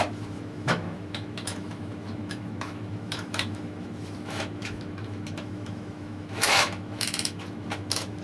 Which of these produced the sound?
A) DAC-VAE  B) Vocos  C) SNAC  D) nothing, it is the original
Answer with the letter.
A